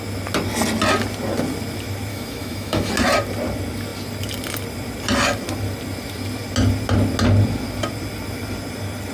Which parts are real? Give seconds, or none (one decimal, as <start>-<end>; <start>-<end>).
0.0-2.1; 2.9-9.1